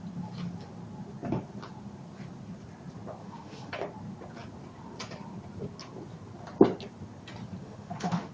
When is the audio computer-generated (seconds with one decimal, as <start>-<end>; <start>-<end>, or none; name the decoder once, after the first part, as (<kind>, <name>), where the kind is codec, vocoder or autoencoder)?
3.2-3.7 (autoencoder, DAC-VAE); 7.6-8.3